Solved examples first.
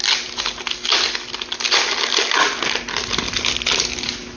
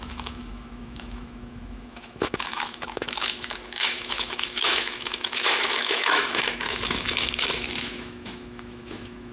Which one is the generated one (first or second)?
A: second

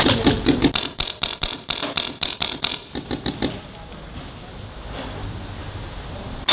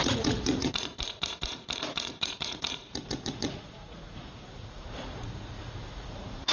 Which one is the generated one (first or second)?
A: second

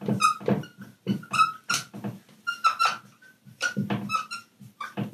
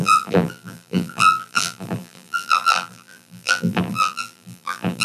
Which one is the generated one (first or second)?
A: second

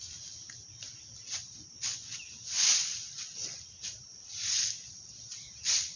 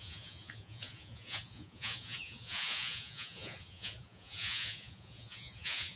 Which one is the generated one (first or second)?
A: second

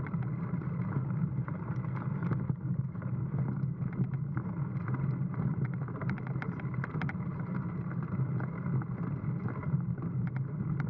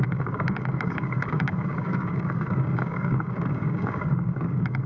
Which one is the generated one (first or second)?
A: second